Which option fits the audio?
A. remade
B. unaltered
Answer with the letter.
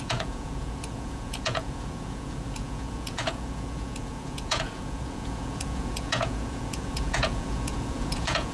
A